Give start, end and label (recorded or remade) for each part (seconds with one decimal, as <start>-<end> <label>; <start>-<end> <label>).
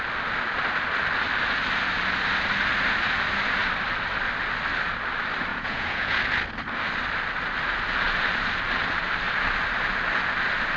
0.0-5.5 recorded; 5.5-6.2 remade; 6.2-10.8 recorded